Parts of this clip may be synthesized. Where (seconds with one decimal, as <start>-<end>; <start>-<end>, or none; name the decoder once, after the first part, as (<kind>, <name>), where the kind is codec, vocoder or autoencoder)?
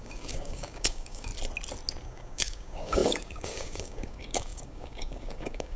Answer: 0.0-1.3 (codec, DAC); 2.0-5.8